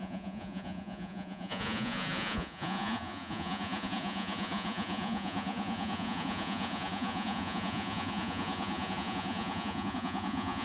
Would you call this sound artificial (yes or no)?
yes